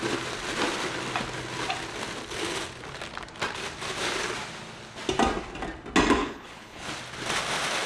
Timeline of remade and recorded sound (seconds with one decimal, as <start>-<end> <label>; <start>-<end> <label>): 0.0-6.2 recorded; 6.2-6.9 remade; 6.9-7.9 recorded